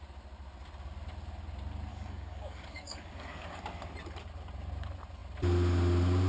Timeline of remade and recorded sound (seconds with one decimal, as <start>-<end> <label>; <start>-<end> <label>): 0.0-1.9 recorded; 1.9-3.6 remade; 3.6-6.3 recorded